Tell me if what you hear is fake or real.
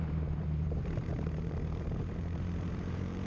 fake